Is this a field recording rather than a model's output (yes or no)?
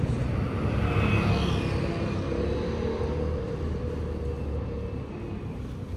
yes